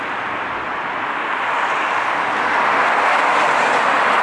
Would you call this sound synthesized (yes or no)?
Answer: no